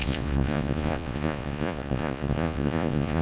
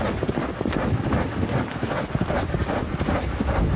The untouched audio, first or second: second